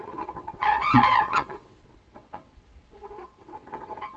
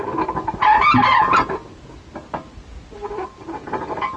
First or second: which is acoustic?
second